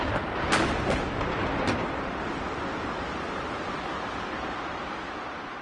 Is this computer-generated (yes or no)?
no